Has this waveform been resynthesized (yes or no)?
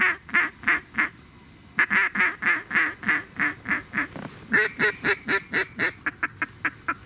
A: no